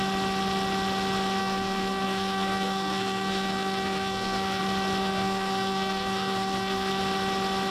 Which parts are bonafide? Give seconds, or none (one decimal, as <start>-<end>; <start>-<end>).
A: 0.0-1.4; 4.6-5.0; 7.0-7.7